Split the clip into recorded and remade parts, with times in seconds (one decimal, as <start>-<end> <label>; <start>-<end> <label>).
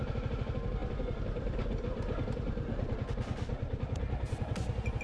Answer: 0.0-5.0 recorded